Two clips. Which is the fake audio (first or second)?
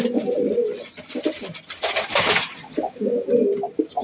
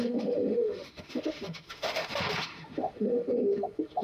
second